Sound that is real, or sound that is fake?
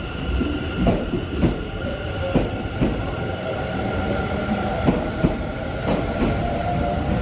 fake